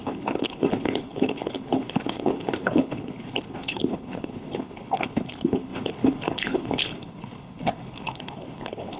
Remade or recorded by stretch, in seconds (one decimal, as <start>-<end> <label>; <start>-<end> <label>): 0.0-9.0 remade